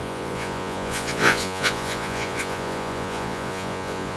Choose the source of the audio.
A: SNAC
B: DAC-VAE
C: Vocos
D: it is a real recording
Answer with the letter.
C